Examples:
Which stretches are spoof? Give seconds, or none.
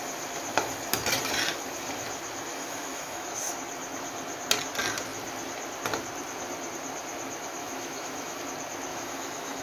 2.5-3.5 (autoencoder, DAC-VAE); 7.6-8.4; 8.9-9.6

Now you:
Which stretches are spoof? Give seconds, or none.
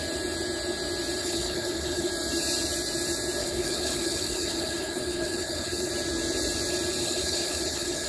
1.2-2.1 (codec, HILCodec); 3.4-5.9; 7.0-8.1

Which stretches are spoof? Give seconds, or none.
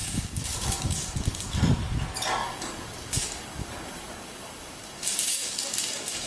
0.0-1.6 (codec, DAC); 2.4-6.3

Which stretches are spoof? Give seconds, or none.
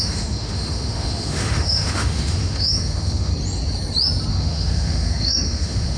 0.0-3.3 (autoencoder, DAC-VAE); 4.3-6.0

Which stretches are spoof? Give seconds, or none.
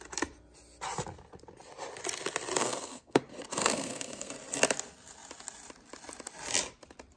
2.6-3.2 (codec, SNAC); 3.6-4.3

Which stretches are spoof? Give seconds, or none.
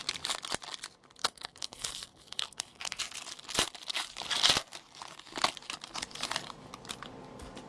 1.2-3.0 (codec, SNAC)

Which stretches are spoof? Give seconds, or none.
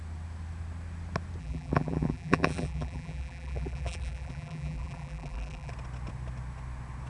1.4-5.7 (vocoder, BigVGAN v2)